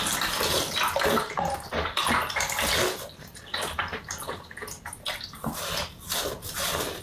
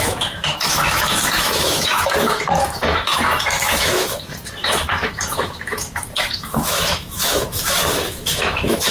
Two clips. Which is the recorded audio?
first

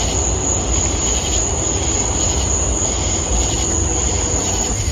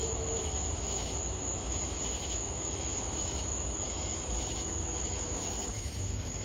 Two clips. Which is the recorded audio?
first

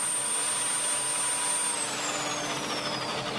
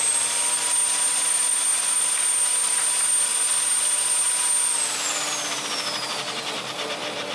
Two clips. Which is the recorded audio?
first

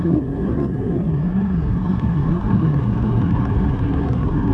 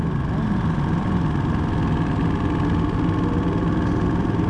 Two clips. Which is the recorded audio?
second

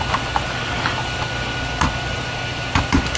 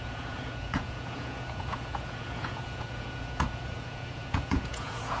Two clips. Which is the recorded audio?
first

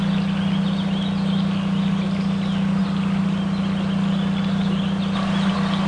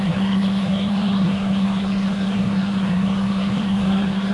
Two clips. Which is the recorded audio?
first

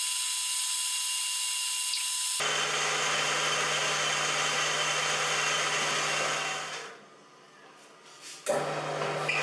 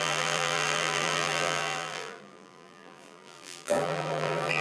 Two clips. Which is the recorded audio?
first